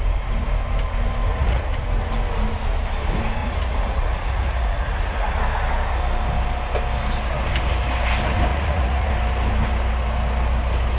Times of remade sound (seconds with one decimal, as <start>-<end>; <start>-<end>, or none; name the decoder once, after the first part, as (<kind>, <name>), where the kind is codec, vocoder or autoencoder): 1.3-1.8 (vocoder, Vocos); 3.4-5.4; 8.5-9.1